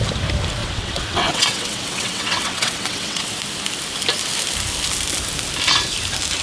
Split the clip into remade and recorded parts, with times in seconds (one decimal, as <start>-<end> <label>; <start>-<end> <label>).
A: 0.0-0.6 recorded; 0.6-3.3 remade; 3.3-6.4 recorded